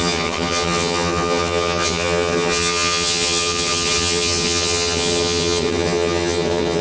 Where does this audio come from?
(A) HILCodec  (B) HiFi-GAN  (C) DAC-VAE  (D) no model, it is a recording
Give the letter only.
B